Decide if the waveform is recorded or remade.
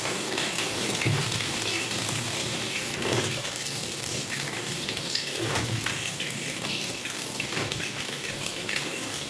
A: remade